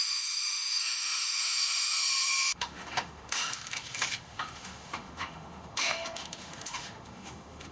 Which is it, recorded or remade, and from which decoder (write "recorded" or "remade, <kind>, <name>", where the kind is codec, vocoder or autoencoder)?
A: remade, autoencoder, DAC-VAE